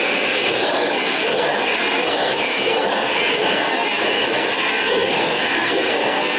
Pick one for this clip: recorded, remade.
remade